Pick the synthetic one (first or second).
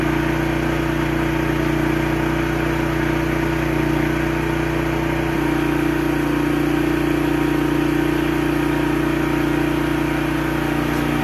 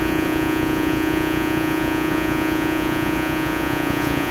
second